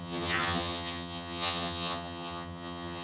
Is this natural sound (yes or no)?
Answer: no